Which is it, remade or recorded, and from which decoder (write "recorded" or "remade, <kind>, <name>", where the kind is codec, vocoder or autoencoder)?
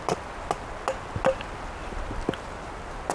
recorded